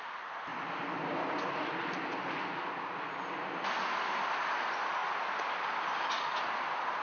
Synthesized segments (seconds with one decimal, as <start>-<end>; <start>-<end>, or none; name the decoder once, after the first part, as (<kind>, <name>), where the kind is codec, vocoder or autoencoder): none